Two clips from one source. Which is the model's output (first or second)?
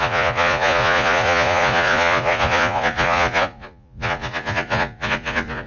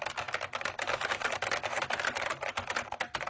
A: first